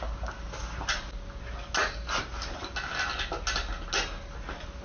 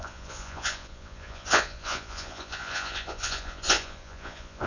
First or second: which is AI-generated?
second